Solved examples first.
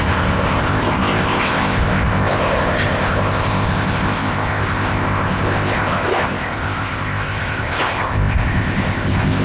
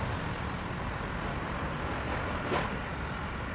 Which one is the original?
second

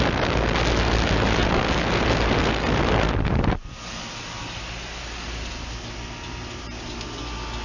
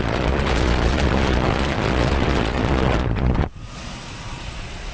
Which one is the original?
first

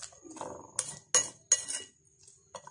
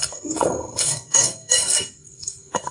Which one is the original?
first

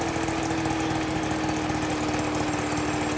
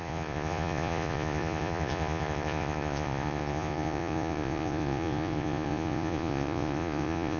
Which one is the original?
first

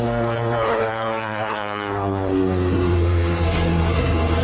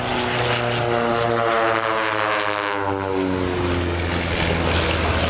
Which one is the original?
second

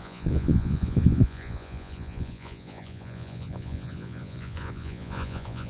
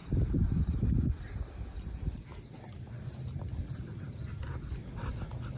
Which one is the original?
second